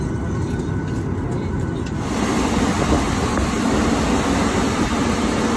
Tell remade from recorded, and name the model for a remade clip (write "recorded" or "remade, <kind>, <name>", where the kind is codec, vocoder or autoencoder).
recorded